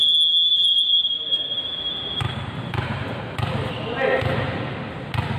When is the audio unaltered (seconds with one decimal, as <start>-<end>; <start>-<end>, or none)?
0.0-0.5; 3.7-5.4